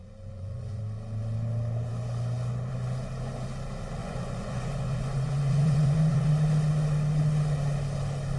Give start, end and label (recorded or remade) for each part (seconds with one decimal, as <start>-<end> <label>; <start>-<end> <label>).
0.0-0.8 remade; 0.8-4.0 recorded; 4.0-6.3 remade; 6.3-8.4 recorded